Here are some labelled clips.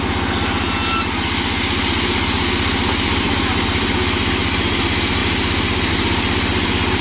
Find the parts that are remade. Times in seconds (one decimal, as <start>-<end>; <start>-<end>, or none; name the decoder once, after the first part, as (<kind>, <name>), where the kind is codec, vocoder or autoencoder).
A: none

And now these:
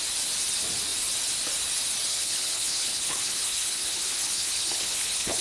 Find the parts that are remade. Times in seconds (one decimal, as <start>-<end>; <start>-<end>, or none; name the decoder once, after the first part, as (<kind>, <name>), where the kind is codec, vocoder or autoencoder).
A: 2.1-5.4 (codec, HILCodec)

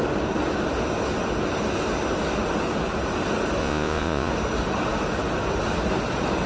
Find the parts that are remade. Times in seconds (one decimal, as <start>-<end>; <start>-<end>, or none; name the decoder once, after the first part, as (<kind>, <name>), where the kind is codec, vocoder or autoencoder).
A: 3.6-4.3 (vocoder, Vocos)